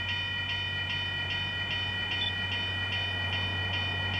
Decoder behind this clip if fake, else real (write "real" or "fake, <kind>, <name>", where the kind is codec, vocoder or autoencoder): real